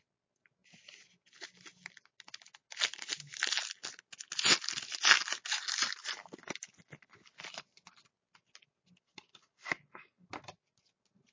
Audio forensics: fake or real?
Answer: real